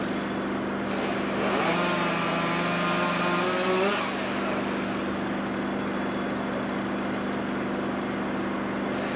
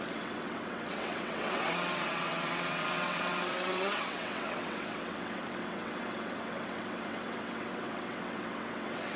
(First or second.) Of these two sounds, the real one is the first